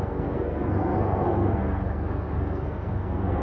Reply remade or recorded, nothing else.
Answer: remade